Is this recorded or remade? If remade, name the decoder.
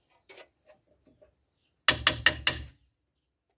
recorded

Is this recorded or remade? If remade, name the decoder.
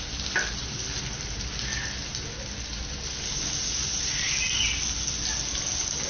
recorded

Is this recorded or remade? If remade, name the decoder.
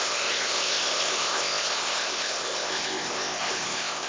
remade, codec, ZipCodec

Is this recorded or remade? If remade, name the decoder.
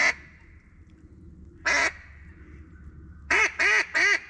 recorded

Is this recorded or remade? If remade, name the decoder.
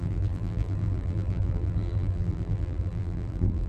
remade, vocoder, BigVGAN v2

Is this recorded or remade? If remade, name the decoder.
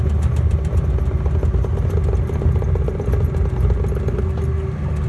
recorded